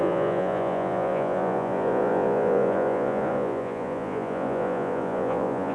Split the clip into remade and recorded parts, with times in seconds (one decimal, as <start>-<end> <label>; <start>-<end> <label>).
0.0-5.7 remade